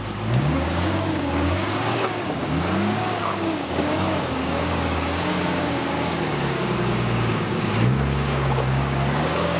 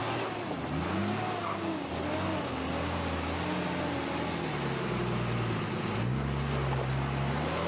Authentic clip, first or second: second